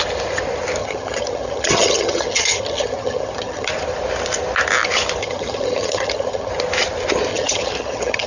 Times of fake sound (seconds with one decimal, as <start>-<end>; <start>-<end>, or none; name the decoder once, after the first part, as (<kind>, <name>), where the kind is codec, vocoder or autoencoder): 0.8-3.7 (vocoder, HiFi-GAN); 5.2-6.5; 7.3-8.3